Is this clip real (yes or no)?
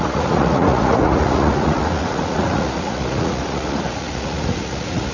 no